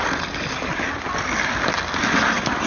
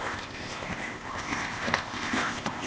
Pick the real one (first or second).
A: first